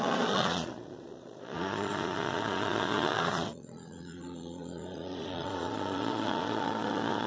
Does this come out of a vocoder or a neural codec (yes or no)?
yes